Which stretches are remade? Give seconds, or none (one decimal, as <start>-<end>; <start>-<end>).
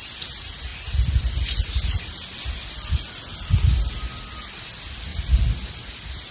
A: none